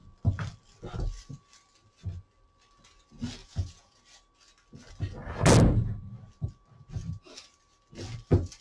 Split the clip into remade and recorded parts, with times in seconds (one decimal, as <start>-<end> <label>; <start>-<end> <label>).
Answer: 0.0-3.4 recorded; 3.4-4.0 remade; 4.0-8.6 recorded